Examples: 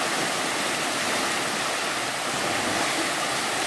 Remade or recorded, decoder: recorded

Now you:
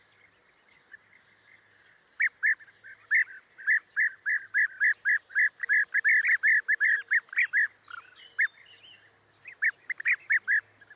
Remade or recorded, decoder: recorded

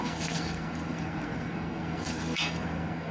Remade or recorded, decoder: remade, codec, SNAC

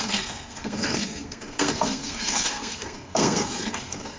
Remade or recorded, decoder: remade, codec, SNAC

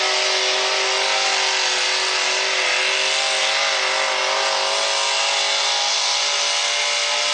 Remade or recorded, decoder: recorded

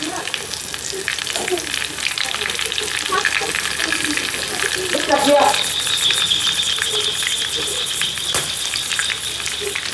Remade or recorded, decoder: recorded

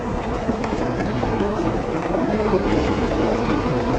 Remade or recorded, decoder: remade, codec, SNAC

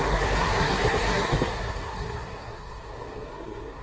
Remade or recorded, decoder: remade, codec, SNAC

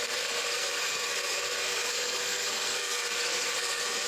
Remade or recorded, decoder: remade, codec, SNAC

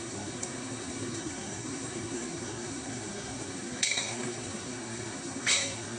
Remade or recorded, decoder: remade, codec, SNAC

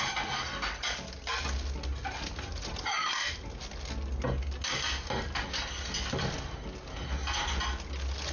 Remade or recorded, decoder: recorded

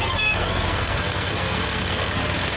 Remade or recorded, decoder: remade, codec, SNAC